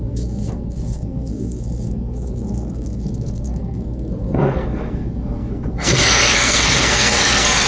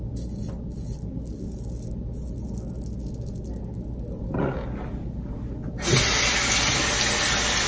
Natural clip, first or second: second